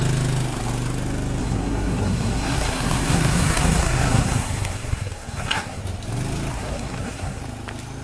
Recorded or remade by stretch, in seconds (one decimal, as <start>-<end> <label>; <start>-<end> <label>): 0.0-1.4 recorded; 1.4-5.8 remade; 5.8-6.5 recorded; 6.5-7.4 remade; 7.4-8.0 recorded